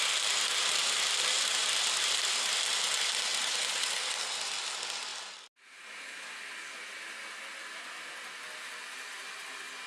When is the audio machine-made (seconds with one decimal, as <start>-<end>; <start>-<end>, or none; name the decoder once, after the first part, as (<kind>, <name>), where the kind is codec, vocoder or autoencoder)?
1.6-2.7 (vocoder, BigVGAN v2); 3.3-4.4